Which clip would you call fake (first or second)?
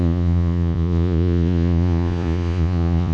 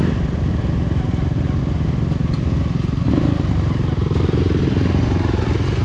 first